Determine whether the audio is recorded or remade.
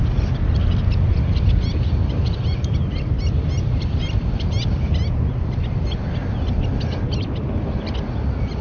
recorded